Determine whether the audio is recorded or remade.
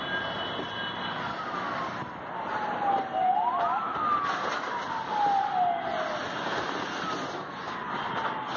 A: recorded